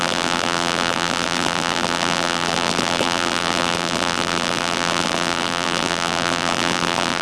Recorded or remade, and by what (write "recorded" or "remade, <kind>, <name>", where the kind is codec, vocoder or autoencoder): remade, vocoder, BigVGAN v2